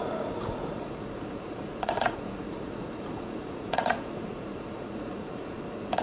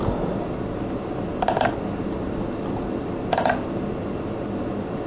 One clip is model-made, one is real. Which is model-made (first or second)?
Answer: first